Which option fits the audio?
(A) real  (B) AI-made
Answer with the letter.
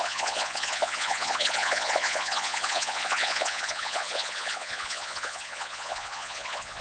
B